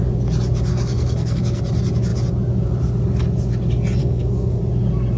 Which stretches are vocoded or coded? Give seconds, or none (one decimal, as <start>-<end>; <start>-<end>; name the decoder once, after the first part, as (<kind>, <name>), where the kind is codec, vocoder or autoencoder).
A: 0.7-1.6 (codec, SNAC); 4.0-4.6